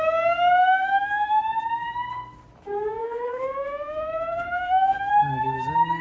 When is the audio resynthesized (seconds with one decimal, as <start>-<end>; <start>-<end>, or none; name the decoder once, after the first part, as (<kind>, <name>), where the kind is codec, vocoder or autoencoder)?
0.6-1.4 (autoencoder, DAC-VAE); 3.0-5.1